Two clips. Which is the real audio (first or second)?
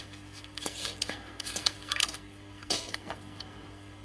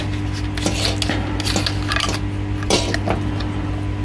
second